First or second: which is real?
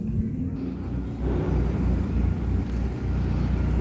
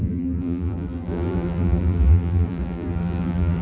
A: first